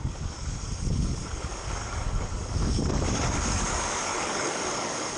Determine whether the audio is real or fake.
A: fake